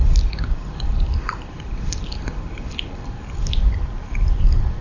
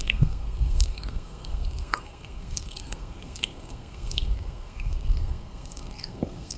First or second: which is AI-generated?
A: second